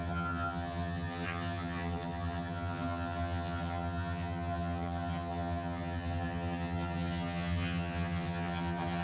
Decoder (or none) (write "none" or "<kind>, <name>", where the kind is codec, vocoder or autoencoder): vocoder, HiFi-GAN